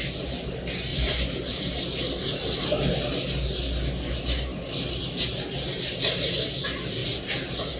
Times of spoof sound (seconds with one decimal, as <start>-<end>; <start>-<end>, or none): 0.9-2.8; 4.5-5.0; 7.0-7.8